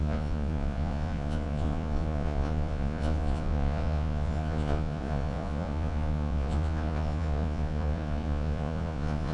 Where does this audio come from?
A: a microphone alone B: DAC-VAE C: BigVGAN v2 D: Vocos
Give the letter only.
D